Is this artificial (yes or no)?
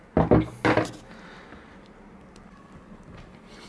no